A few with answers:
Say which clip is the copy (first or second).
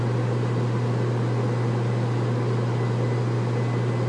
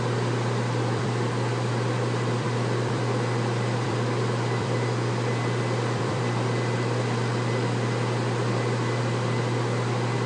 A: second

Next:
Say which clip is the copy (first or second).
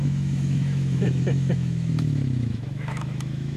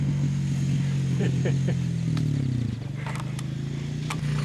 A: first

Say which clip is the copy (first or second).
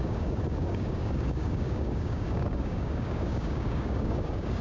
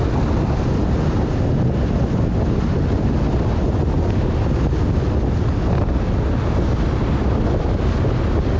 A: first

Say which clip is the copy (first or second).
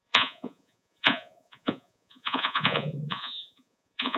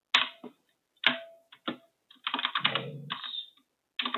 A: first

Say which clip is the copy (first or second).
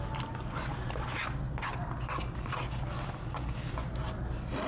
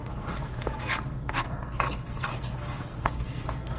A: second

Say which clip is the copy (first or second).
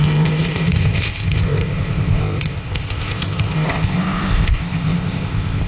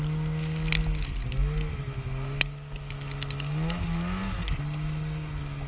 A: first